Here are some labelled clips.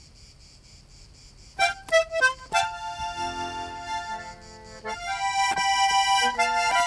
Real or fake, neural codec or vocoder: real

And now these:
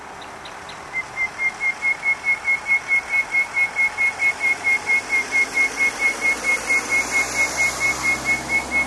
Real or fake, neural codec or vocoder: real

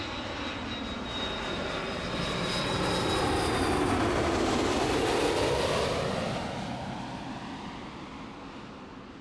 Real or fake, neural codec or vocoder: real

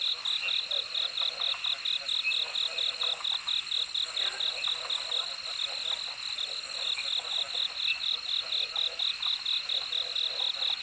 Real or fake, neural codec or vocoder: real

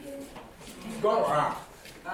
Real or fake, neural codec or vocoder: fake, vocoder, BigVGAN v2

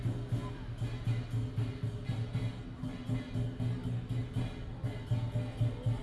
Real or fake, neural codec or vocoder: real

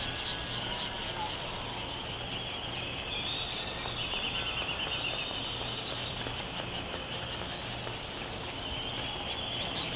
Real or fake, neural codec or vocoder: real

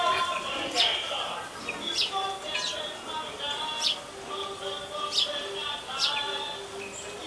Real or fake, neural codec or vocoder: real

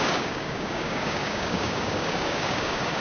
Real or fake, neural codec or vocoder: fake, codec, DAC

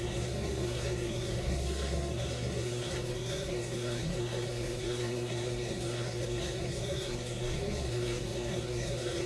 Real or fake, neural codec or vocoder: fake, codec, SNAC